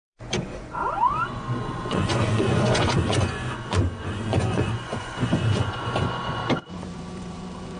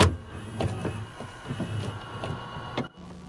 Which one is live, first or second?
second